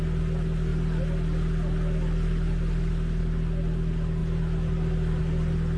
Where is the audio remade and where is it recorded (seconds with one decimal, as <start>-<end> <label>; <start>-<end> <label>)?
0.0-5.8 recorded

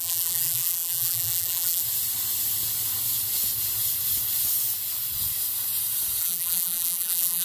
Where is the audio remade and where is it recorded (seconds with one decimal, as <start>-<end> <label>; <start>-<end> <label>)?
0.0-1.8 remade; 1.8-6.2 recorded; 6.2-7.4 remade